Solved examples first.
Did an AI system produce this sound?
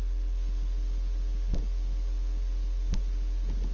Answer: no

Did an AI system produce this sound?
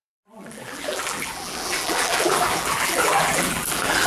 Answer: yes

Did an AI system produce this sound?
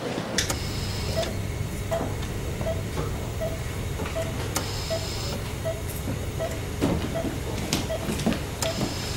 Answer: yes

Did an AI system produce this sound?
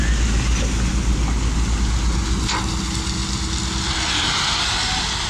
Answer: no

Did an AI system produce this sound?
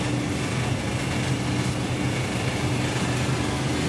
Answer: no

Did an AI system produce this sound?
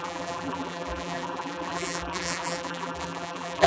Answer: yes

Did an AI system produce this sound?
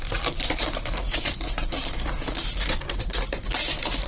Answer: yes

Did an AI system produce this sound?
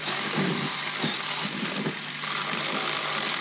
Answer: yes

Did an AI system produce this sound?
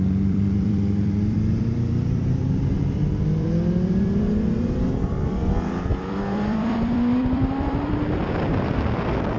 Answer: yes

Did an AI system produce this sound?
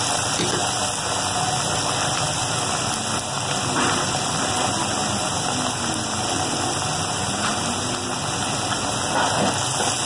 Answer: no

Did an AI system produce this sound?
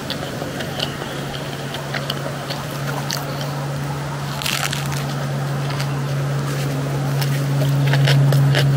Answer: no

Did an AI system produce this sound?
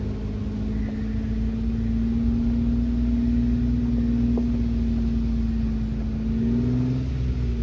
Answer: no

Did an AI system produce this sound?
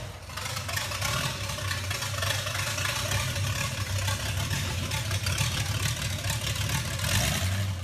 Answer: no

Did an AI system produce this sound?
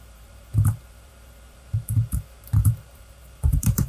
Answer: yes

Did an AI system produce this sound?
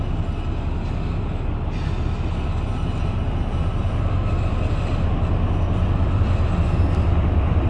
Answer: no